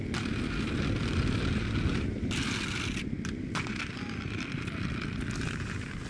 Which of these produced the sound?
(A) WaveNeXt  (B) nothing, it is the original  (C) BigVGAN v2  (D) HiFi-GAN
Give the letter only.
B